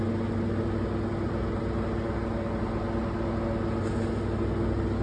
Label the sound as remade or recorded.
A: recorded